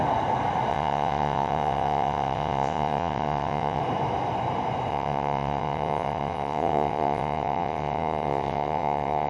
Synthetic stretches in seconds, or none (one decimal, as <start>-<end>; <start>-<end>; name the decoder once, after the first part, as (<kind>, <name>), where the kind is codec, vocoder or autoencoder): 0.7-3.8 (vocoder, WaveNeXt); 4.9-9.3